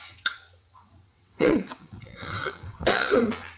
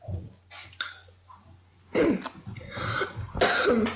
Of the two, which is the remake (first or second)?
first